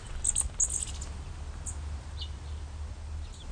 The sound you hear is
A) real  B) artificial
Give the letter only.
A